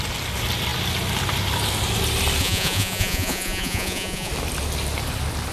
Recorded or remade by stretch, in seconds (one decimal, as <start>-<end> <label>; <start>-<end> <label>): 0.0-2.4 recorded; 2.4-4.3 remade; 4.3-5.5 recorded